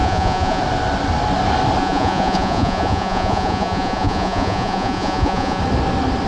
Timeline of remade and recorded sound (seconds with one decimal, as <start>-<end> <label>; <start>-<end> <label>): 0.0-0.6 remade; 0.6-1.8 recorded; 1.8-5.6 remade; 5.6-6.3 recorded